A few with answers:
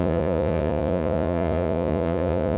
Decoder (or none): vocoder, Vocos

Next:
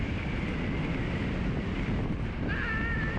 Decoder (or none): none